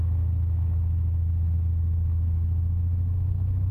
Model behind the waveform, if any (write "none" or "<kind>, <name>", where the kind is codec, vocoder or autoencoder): none